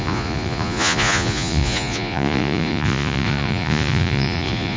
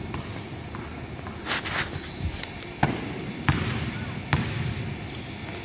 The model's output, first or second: first